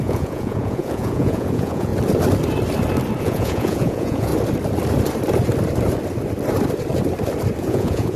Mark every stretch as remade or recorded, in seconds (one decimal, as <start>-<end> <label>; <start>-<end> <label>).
0.0-1.9 remade; 1.9-3.2 recorded; 3.2-4.3 remade; 4.3-7.6 recorded; 7.6-8.2 remade